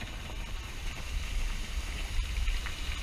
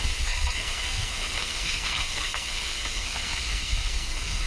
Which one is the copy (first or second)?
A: second